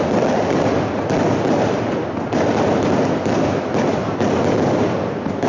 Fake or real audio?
real